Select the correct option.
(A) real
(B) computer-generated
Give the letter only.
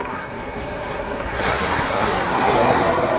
B